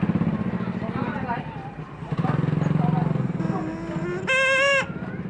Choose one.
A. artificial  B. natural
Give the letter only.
B